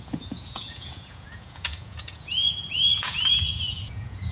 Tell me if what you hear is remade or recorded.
remade